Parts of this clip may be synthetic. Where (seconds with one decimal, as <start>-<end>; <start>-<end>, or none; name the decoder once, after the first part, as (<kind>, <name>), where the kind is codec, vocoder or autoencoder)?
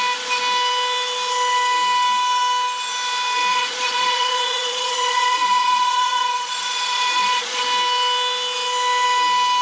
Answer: 3.5-7.6 (vocoder, Vocos)